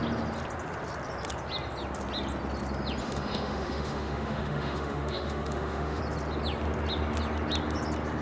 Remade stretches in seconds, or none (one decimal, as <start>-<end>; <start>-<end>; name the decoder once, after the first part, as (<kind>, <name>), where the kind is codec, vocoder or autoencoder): 3.0-6.0 (autoencoder, DAC-VAE)